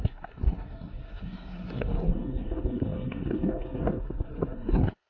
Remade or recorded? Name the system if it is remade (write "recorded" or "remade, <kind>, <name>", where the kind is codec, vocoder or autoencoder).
remade, codec, SNAC